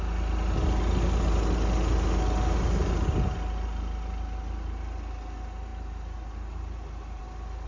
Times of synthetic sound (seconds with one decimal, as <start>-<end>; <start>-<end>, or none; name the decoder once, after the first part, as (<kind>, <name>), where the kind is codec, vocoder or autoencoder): none